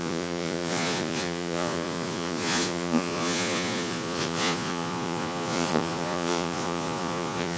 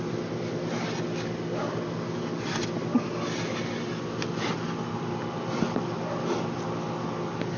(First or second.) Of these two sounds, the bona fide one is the second